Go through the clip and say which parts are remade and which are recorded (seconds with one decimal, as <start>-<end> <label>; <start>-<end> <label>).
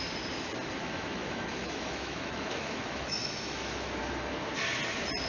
0.0-0.8 recorded; 0.8-4.0 remade; 4.0-5.3 recorded